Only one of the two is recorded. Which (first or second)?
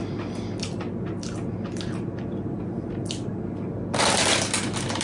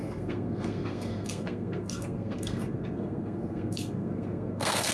first